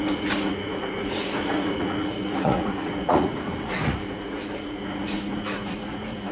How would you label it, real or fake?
fake